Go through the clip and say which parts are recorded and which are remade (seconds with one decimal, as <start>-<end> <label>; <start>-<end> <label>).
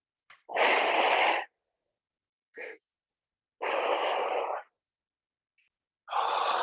0.0-2.2 recorded; 2.2-2.8 remade; 2.8-6.6 recorded